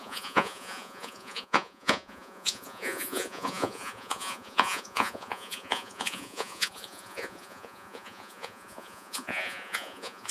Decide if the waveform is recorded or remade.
remade